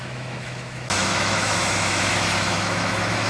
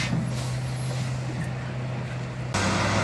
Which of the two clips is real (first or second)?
second